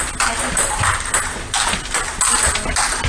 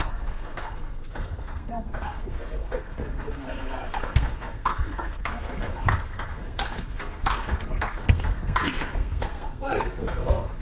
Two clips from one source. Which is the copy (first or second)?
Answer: second